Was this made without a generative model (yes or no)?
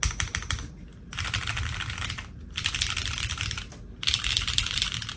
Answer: yes